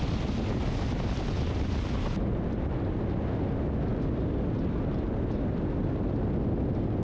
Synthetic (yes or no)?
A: no